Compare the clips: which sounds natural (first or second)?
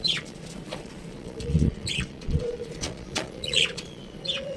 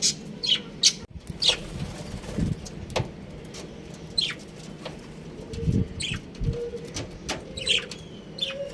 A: second